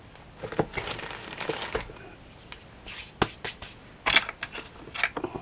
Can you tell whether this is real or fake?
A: real